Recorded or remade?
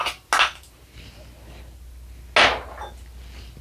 recorded